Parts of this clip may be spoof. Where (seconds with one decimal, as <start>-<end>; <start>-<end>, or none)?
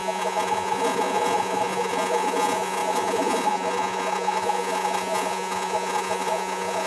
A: 0.0-6.9